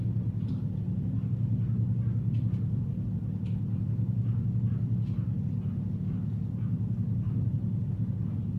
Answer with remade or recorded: recorded